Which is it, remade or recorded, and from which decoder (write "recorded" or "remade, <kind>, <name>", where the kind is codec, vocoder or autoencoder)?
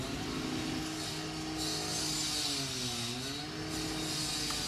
recorded